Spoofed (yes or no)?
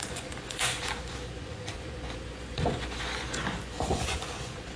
yes